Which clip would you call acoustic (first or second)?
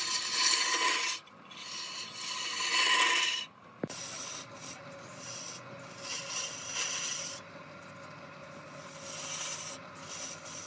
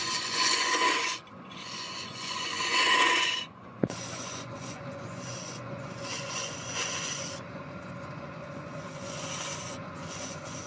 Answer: first